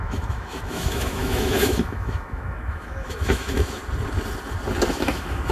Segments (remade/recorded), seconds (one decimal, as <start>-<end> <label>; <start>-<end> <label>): 0.0-3.8 remade; 3.8-4.9 recorded; 4.9-5.5 remade